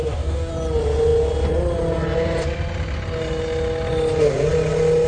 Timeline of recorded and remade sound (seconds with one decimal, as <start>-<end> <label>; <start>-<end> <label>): 0.0-0.5 remade; 0.5-5.1 recorded